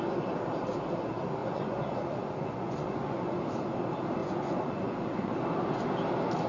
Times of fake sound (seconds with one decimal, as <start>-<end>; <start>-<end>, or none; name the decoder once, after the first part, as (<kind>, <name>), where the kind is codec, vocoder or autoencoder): 1.4-3.4 (vocoder, Vocos); 4.2-5.3